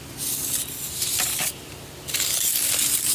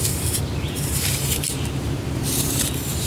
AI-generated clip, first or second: second